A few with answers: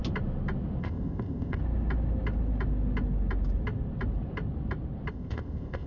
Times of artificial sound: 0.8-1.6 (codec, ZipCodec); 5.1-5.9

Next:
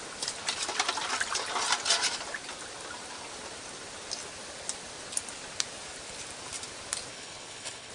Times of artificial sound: 7.1-7.9 (codec, HILCodec)

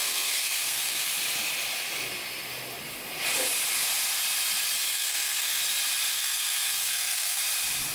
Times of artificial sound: 0.0-1.1 (codec, SNAC); 4.9-5.6; 6.1-7.4

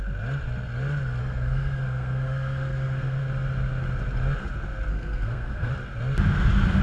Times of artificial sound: 1.2-3.2 (codec, SNAC); 4.9-5.7